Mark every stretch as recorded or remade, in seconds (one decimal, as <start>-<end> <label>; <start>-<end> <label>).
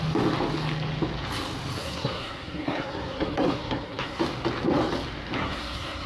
0.0-1.8 recorded; 1.8-4.2 remade; 4.2-5.4 recorded; 5.4-6.1 remade